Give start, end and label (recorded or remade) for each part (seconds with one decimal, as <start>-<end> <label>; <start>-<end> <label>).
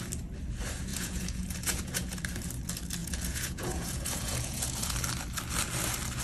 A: 0.0-0.9 recorded; 0.9-2.2 remade; 2.2-3.0 recorded; 3.0-4.9 remade; 4.9-6.2 recorded